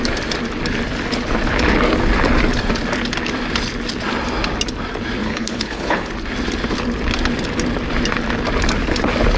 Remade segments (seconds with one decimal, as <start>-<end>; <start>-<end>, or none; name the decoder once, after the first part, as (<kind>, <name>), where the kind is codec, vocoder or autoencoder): 5.2-6.1 (codec, HILCodec)